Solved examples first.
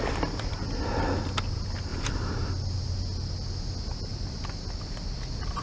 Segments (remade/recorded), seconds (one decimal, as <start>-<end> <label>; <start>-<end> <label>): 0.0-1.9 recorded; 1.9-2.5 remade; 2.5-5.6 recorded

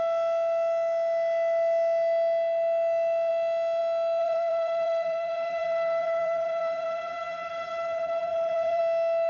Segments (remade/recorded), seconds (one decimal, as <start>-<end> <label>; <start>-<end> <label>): 0.0-4.2 recorded; 4.2-8.8 remade; 8.8-9.3 recorded

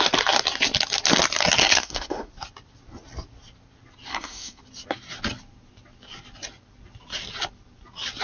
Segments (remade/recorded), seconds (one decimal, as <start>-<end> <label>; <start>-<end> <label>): 0.0-1.6 recorded; 1.6-2.3 remade; 2.3-4.1 recorded; 4.1-4.6 remade; 4.6-8.2 recorded

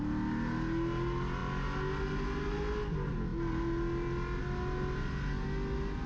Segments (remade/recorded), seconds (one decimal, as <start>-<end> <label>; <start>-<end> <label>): 0.0-6.1 recorded

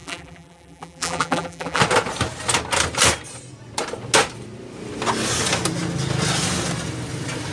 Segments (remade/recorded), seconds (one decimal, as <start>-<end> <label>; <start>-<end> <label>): 0.0-1.8 remade; 1.8-7.5 recorded